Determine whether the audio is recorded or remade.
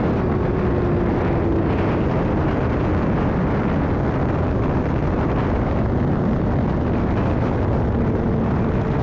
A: recorded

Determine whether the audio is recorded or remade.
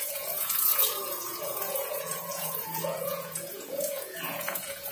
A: remade